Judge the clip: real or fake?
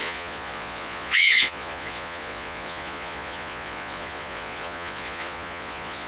fake